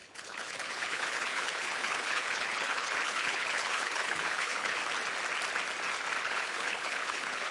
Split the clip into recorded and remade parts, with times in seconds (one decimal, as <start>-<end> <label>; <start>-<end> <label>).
0.0-4.8 remade; 4.8-6.2 recorded; 6.2-7.5 remade

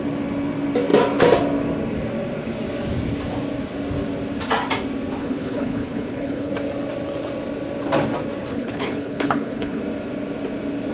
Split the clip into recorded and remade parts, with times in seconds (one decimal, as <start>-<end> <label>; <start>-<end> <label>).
0.0-5.2 recorded; 5.2-6.5 remade; 6.5-8.5 recorded; 8.5-9.8 remade; 9.8-10.9 recorded